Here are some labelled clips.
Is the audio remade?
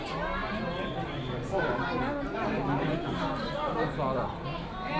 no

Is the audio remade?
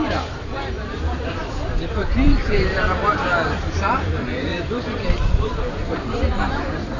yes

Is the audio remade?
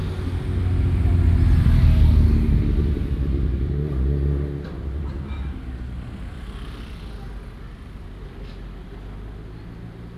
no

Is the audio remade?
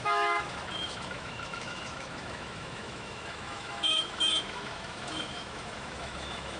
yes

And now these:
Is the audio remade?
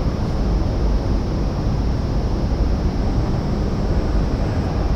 no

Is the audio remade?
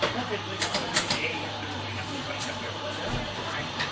yes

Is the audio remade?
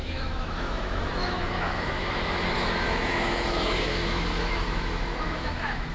yes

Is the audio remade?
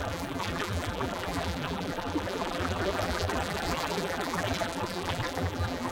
yes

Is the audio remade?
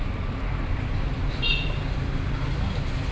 no